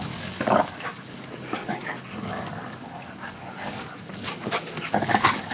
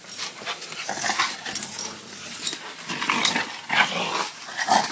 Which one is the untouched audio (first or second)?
second